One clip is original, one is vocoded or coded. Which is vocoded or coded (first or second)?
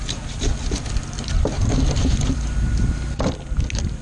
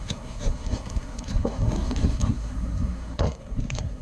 second